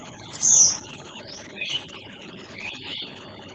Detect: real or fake fake